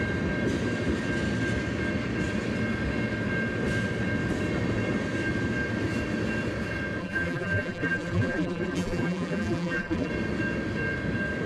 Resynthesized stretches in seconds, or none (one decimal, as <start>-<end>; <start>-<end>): 7.0-10.1